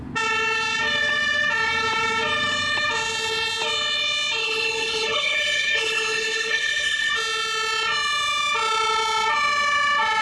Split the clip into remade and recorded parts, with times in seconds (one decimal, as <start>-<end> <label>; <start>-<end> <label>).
0.0-4.4 recorded; 4.4-7.1 remade; 7.1-10.2 recorded